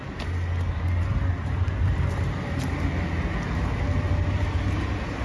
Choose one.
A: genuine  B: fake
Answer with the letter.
A